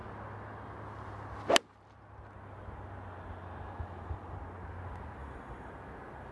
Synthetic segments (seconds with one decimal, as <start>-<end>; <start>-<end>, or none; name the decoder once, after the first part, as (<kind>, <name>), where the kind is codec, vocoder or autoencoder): 5.2-5.7 (vocoder, BigVGAN v2)